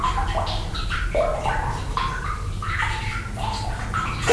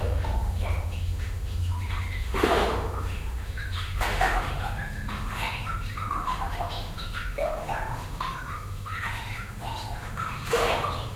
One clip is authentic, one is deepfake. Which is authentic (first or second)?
first